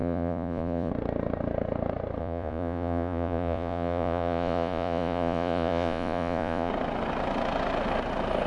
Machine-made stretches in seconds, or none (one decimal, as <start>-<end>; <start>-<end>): 0.0-0.9; 2.2-6.7